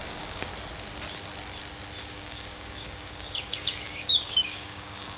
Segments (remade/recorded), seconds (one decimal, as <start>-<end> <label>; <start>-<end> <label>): 0.0-0.5 remade; 0.5-2.0 recorded; 2.0-5.2 remade